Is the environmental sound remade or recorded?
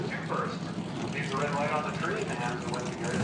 recorded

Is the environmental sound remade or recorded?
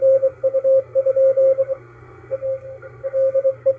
remade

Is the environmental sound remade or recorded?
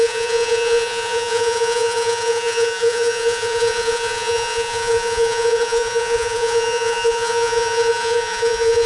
remade